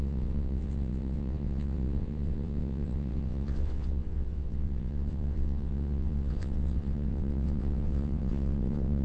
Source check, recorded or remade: remade